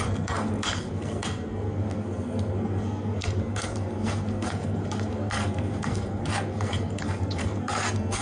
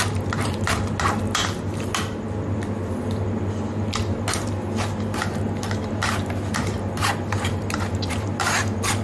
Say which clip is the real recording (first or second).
second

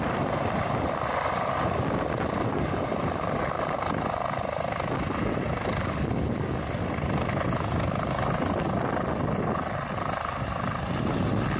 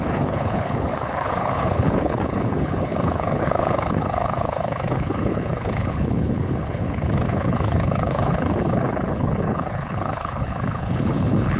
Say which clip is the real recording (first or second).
first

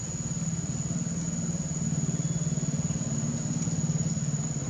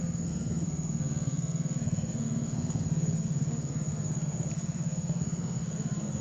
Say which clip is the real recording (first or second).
first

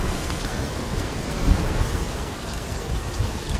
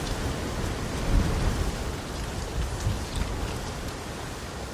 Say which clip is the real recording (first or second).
second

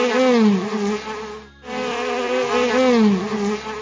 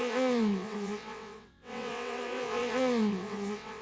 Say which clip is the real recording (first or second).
first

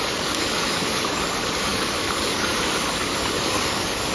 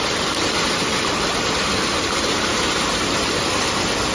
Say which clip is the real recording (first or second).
second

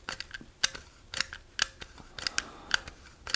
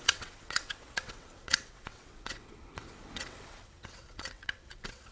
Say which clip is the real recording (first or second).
first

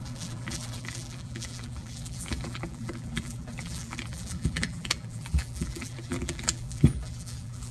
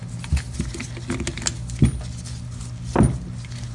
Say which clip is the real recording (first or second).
second